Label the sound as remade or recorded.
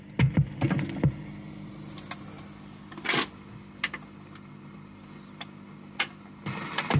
recorded